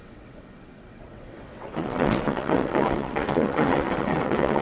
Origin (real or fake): fake